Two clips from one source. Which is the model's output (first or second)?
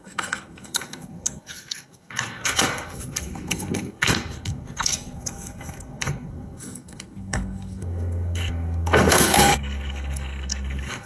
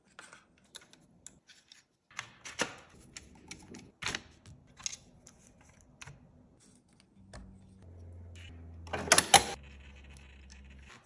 first